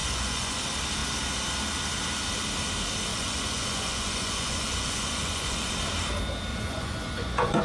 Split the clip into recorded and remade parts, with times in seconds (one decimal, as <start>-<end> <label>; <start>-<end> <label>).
0.0-0.6 remade; 0.6-3.1 recorded; 3.1-5.7 remade; 5.7-6.5 recorded; 6.5-7.6 remade